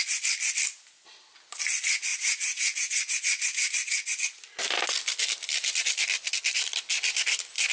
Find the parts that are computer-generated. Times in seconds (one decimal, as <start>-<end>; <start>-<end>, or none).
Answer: 2.1-4.1